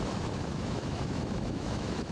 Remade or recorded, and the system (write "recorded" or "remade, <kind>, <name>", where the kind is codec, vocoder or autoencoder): remade, autoencoder, DAC-VAE